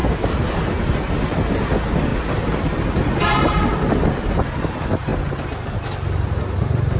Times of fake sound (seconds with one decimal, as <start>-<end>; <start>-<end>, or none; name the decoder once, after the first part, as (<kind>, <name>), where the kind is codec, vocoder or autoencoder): 0.0-0.8 (vocoder, BigVGAN v2)